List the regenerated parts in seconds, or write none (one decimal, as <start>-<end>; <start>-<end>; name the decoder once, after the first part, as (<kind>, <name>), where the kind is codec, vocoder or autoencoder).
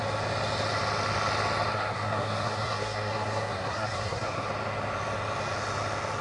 1.7-4.5 (codec, SNAC)